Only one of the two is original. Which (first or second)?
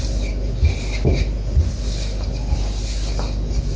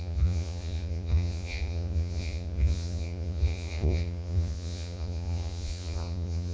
first